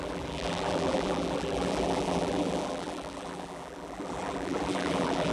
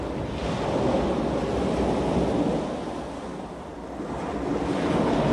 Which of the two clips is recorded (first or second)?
second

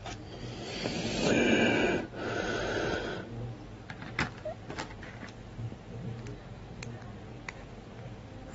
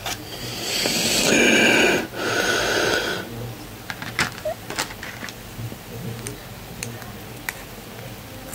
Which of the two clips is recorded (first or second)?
first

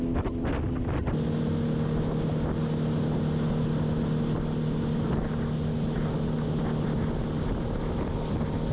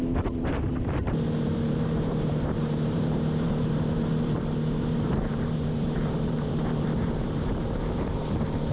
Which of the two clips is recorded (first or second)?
first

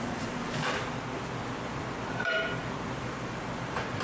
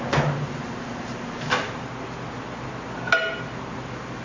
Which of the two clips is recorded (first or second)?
second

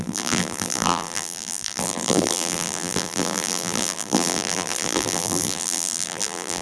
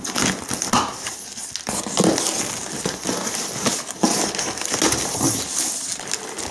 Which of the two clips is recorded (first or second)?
second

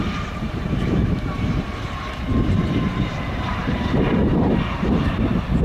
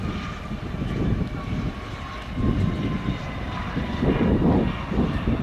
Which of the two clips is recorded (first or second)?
second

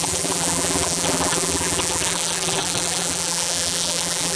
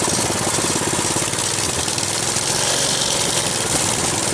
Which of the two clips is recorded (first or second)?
second